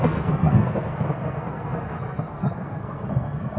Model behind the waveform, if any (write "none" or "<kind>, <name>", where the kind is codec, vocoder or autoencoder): codec, SNAC